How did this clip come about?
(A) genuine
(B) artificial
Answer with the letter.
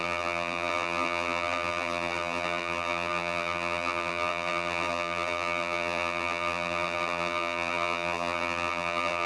B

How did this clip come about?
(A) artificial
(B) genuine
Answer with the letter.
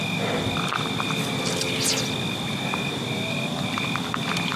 B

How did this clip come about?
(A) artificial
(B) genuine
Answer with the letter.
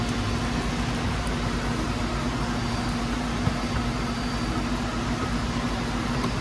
B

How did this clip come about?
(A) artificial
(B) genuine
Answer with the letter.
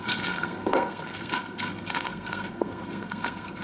A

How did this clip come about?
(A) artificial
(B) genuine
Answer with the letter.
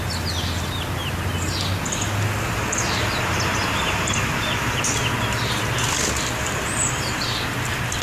B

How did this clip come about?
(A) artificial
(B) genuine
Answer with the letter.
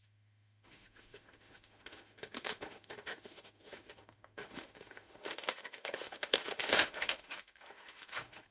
A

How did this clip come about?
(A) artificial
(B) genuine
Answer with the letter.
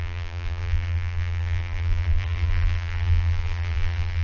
A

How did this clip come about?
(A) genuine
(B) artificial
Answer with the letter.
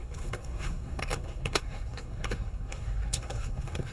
B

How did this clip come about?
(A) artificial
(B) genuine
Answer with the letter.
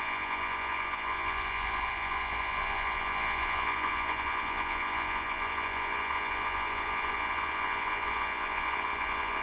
A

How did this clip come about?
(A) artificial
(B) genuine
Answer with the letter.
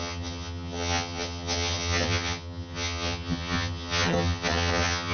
A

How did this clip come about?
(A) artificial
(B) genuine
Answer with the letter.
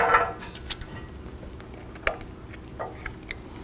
B